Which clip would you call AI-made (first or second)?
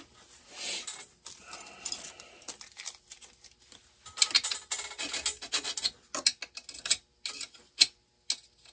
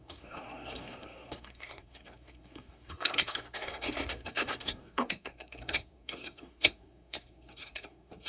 second